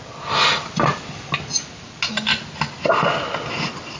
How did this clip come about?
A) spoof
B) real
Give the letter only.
B